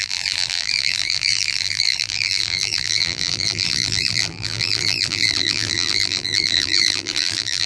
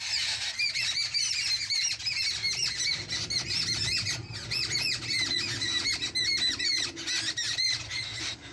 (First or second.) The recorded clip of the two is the second